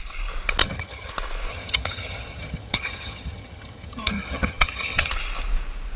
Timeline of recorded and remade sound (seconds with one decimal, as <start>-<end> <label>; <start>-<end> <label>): 0.0-0.6 recorded; 0.6-1.1 remade; 1.1-1.5 recorded; 1.5-5.1 remade; 5.1-6.0 recorded